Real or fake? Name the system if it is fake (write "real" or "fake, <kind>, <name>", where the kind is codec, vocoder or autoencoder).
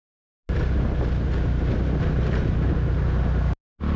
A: real